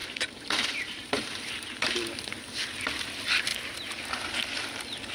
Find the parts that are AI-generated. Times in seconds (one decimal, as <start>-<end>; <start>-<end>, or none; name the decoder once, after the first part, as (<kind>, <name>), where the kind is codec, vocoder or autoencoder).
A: 0.0-2.2 (vocoder, BigVGAN v2); 3.5-4.2